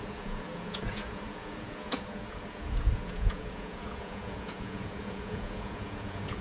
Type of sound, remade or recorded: remade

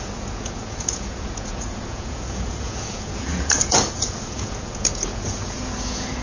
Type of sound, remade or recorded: remade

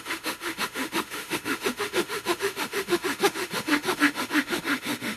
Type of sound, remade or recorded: remade